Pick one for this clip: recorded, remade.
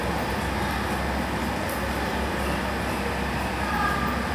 recorded